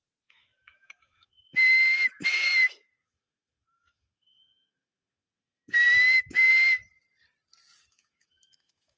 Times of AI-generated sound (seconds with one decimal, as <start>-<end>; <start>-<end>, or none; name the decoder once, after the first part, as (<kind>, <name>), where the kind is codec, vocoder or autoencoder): 0.0-6.5 (autoencoder, DAC-VAE); 7.9-9.0